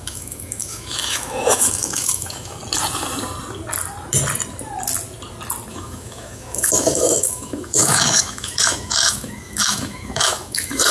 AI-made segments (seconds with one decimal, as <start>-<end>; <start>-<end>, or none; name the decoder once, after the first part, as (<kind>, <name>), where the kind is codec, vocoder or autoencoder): 0.0-2.6 (autoencoder, DAC-VAE); 5.7-10.9